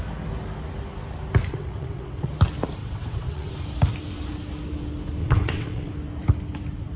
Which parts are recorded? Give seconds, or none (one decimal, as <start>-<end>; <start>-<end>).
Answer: 0.0-1.5; 2.3-2.8; 3.5-5.2; 5.9-7.0